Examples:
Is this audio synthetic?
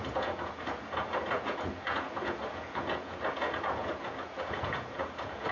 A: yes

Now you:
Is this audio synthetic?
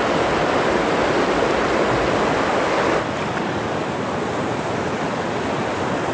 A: no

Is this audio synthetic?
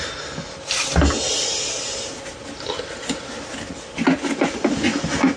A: no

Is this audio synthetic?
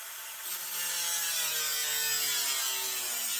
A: no